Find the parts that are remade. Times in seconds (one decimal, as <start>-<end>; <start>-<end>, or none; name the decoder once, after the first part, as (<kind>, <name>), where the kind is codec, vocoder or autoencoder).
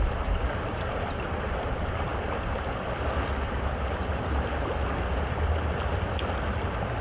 none